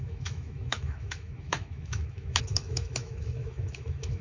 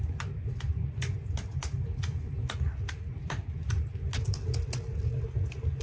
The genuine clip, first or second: second